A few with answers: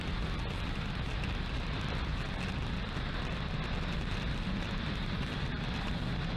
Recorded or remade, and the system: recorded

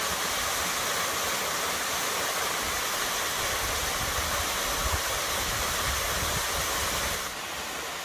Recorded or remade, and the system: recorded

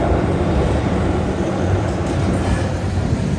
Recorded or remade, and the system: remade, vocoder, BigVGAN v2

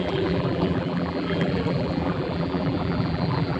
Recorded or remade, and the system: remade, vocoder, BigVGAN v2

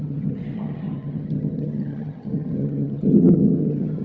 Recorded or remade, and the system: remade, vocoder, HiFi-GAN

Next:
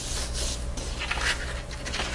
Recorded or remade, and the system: recorded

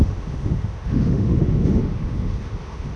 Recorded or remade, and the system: remade, autoencoder, DAC-VAE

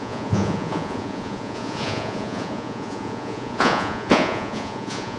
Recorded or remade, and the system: remade, vocoder, Vocos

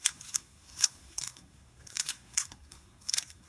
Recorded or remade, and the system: remade, codec, SNAC